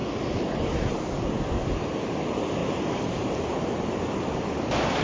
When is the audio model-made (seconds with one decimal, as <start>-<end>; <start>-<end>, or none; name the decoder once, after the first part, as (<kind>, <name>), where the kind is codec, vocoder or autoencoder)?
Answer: 2.6-4.4 (vocoder, BigVGAN v2)